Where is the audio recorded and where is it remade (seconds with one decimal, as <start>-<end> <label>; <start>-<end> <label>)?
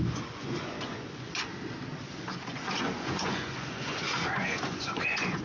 0.0-1.5 remade; 1.5-2.4 recorded; 2.4-5.4 remade